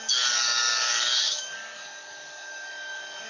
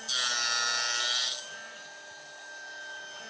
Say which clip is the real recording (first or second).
second